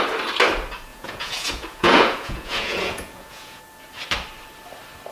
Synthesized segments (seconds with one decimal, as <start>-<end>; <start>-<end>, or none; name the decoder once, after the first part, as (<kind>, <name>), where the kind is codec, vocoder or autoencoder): 0.9-3.6 (vocoder, Vocos)